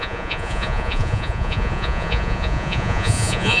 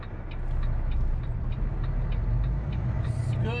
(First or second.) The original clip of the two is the second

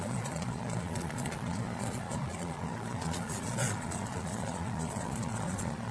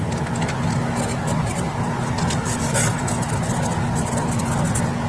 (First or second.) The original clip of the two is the second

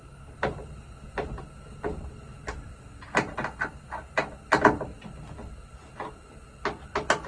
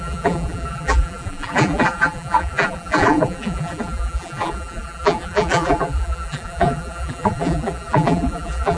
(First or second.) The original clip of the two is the first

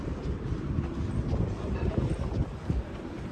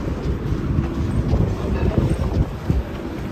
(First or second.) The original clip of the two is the second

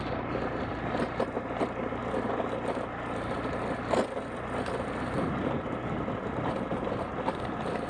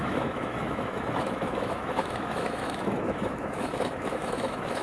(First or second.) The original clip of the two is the first